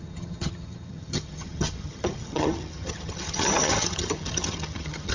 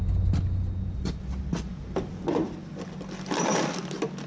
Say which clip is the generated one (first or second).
first